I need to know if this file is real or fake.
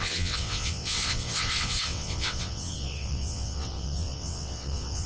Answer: fake